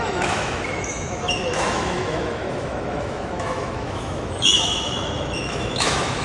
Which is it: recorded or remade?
remade